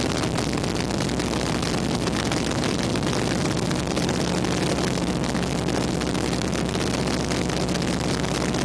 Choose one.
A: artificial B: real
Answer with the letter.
B